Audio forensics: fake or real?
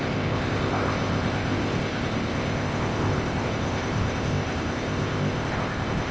fake